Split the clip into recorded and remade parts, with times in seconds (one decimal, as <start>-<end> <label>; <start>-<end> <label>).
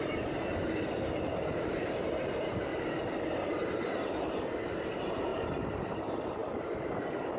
0.0-2.7 remade; 2.7-4.4 recorded; 4.4-6.4 remade; 6.4-7.4 recorded